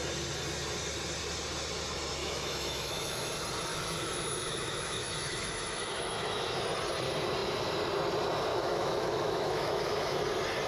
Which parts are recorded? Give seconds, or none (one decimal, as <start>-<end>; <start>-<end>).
0.0-2.2; 3.3-3.7; 6.6-8.5; 10.2-10.7